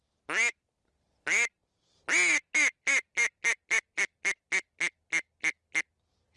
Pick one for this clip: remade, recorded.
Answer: recorded